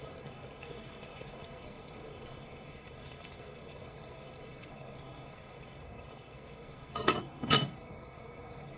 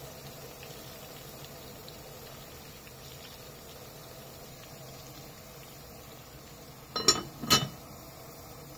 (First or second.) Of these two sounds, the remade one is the first